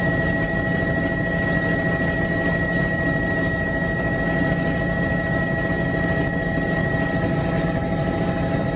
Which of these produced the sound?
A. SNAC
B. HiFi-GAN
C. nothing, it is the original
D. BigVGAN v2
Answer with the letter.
C